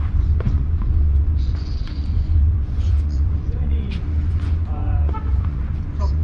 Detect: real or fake fake